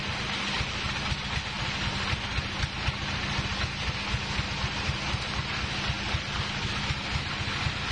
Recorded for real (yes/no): yes